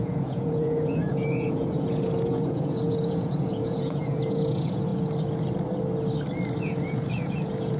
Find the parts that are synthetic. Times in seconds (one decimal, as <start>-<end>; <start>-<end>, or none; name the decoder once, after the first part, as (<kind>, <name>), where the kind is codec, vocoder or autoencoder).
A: 0.0-4.9 (vocoder, Vocos); 6.6-7.8